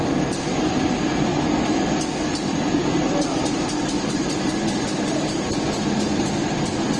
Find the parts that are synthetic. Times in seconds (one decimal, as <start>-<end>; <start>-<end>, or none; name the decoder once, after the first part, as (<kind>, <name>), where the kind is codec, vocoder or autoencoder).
none